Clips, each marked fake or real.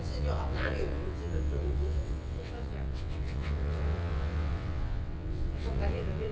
fake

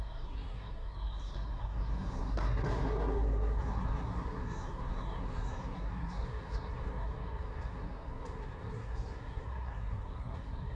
fake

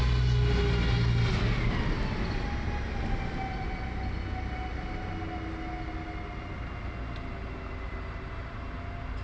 real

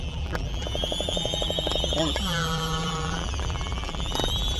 fake